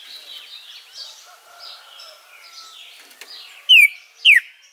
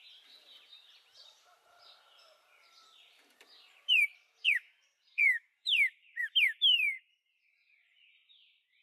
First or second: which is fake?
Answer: second